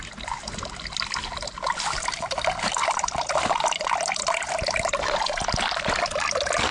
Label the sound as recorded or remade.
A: recorded